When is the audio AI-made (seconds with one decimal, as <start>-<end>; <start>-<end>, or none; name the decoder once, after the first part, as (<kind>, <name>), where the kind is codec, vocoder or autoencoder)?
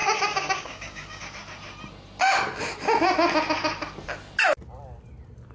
0.0-1.2 (codec, DAC)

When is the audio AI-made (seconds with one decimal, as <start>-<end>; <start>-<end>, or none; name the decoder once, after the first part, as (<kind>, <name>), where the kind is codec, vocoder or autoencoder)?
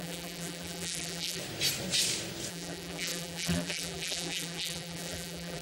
0.0-1.4 (vocoder, BigVGAN v2); 2.5-5.6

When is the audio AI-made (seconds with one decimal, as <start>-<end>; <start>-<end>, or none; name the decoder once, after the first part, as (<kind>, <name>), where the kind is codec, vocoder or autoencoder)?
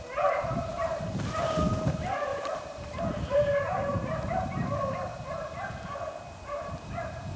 0.0-7.4 (vocoder, BigVGAN v2)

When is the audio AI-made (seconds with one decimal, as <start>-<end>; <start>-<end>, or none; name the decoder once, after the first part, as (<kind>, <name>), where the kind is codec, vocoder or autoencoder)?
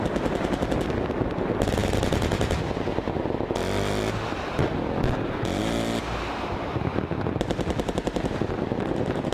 none